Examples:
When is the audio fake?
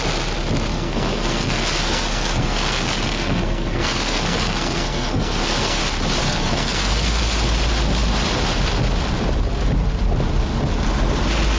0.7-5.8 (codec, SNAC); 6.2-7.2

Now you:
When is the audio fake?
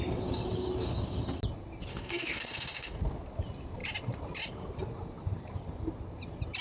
1.9-3.0 (codec, DAC)